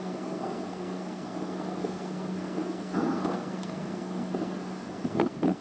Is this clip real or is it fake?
fake